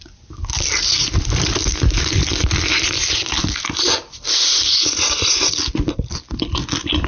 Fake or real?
real